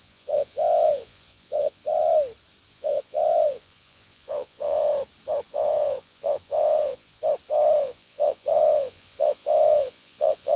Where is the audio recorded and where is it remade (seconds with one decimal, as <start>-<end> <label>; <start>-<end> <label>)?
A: 0.0-1.8 remade; 1.8-2.7 recorded; 2.7-4.9 remade; 4.9-5.5 recorded; 5.5-7.2 remade; 7.2-7.8 recorded; 7.8-10.6 remade